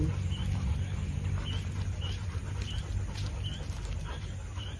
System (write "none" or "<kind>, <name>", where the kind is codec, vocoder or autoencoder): none